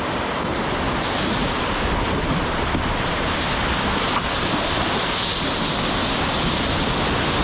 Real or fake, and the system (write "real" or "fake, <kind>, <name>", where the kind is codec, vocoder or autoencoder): real